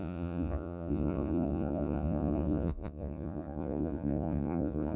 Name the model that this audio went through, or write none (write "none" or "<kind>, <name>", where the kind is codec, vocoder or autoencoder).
vocoder, Vocos